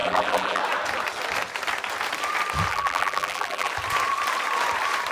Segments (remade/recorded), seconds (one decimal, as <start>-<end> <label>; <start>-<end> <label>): 0.0-0.6 remade; 0.6-2.7 recorded; 2.7-3.7 remade; 3.7-5.1 recorded